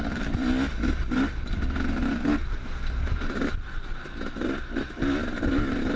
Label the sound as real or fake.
real